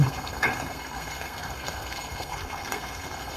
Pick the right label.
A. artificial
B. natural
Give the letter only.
A